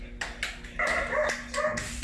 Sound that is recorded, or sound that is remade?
recorded